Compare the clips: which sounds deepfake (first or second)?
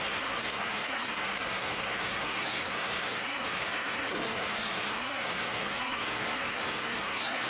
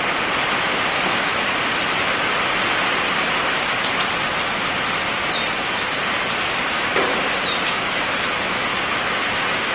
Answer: first